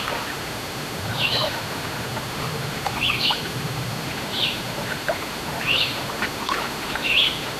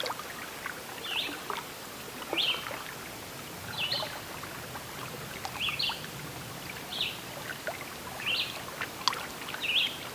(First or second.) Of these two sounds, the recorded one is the second